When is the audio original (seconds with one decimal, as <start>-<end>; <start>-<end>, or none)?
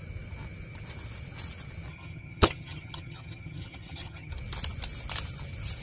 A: 0.0-1.9; 4.3-5.8